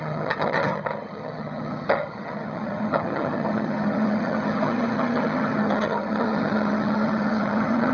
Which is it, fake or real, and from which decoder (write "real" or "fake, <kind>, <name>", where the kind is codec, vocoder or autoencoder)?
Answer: fake, vocoder, HiFi-GAN